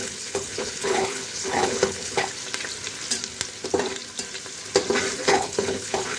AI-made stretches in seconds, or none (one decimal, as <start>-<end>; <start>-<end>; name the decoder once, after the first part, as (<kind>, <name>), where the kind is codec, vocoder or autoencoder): 0.0-2.3 (codec, HILCodec); 5.2-6.2